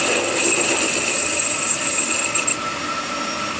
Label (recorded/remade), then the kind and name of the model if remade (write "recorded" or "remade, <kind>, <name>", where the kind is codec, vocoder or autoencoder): remade, vocoder, BigVGAN v2